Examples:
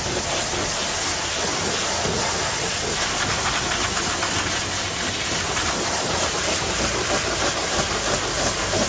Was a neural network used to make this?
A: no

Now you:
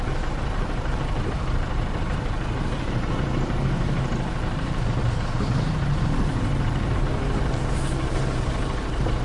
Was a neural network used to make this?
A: yes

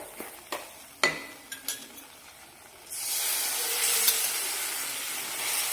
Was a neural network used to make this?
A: no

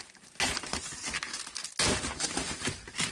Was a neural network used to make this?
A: no